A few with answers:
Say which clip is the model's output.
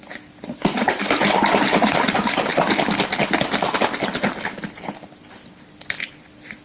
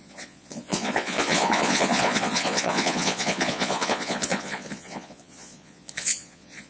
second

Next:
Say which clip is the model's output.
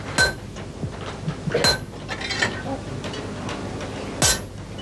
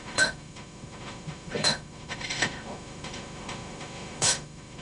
second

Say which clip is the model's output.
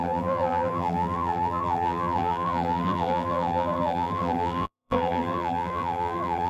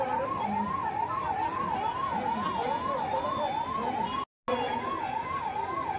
first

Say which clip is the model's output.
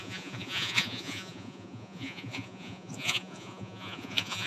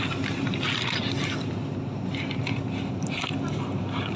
first